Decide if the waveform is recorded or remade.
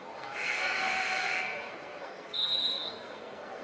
remade